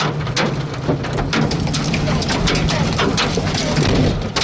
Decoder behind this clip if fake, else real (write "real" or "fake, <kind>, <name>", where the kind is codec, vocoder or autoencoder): real